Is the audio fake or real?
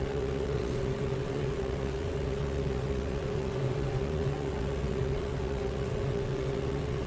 fake